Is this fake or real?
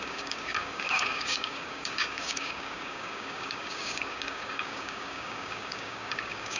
fake